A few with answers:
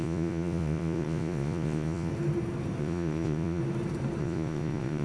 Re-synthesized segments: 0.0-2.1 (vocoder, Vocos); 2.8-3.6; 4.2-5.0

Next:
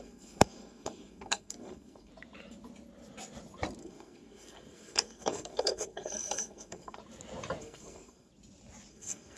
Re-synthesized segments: 0.0-2.1 (codec, SNAC); 3.8-7.0; 7.6-8.3; 8.9-9.4

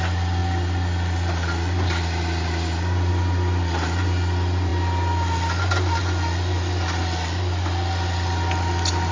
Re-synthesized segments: none

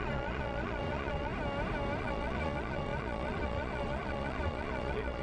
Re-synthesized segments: 0.0-1.3 (vocoder, Vocos); 2.0-5.2